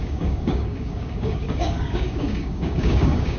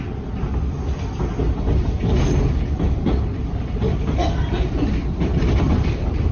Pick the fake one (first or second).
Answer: first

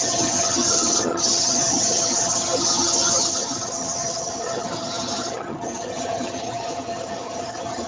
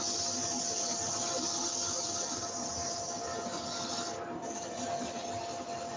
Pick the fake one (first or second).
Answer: first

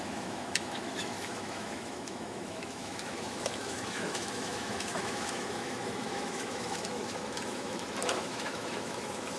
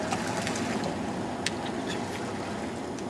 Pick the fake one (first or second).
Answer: first